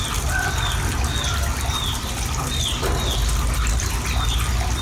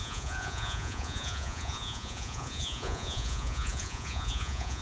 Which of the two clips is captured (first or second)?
first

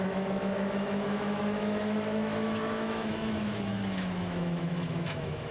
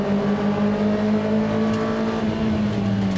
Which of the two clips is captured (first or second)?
second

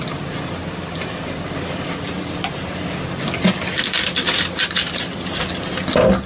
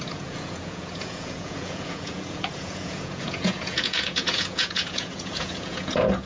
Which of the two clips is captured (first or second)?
first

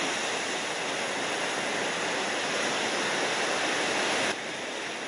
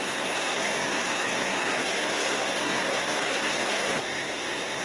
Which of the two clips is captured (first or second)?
first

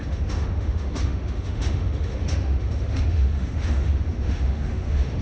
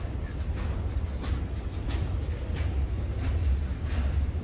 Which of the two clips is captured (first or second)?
second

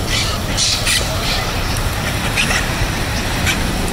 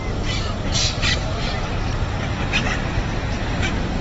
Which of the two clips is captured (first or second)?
second